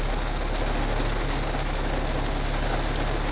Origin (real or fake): real